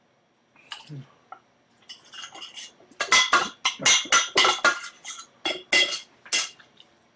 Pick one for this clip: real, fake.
real